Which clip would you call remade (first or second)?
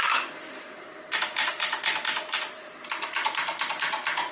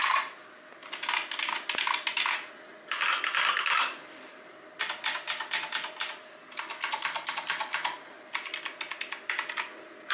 first